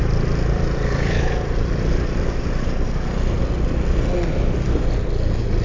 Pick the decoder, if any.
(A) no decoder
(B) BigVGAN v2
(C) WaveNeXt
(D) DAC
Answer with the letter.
A